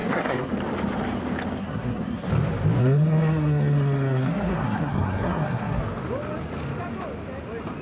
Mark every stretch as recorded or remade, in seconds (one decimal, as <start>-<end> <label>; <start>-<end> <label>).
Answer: 0.0-0.5 remade; 0.5-1.6 recorded; 1.6-2.3 remade; 2.3-2.8 recorded; 2.8-5.8 remade; 5.8-7.8 recorded